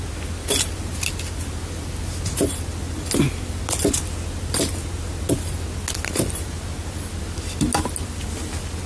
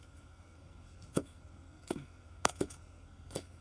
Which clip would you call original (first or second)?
first